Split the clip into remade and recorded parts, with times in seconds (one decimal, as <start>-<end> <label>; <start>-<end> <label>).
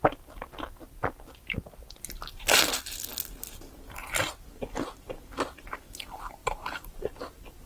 0.0-6.4 recorded; 6.4-7.1 remade; 7.1-7.7 recorded